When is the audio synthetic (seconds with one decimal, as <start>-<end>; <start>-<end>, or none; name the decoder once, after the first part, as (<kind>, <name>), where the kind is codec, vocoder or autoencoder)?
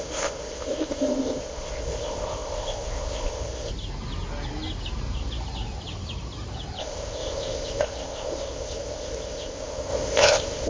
0.0-3.7 (codec, ZipCodec); 6.8-10.7